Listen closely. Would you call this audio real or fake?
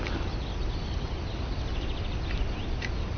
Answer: real